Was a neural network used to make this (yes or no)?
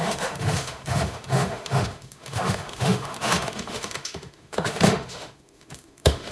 yes